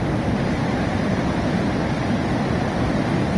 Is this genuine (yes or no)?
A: no